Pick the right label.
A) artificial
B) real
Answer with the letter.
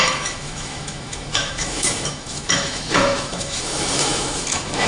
A